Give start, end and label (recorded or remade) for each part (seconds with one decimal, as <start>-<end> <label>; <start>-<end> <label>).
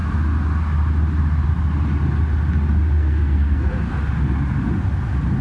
0.0-3.0 recorded; 3.0-3.7 remade; 3.7-5.4 recorded